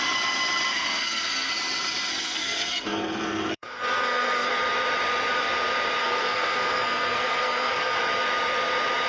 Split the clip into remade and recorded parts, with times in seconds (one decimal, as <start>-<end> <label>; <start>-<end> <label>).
0.0-0.7 recorded; 0.7-1.5 remade; 1.5-2.1 recorded; 2.1-4.5 remade; 4.5-6.0 recorded; 6.0-8.0 remade; 8.0-9.1 recorded